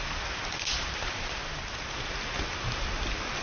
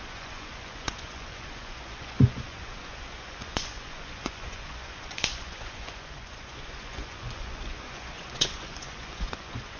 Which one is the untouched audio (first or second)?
first